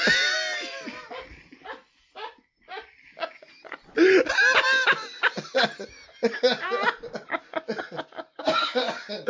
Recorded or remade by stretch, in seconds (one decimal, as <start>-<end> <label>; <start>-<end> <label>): 0.0-8.4 recorded; 8.4-9.3 remade